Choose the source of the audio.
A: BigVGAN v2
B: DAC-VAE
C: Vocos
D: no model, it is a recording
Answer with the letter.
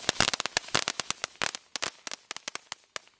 D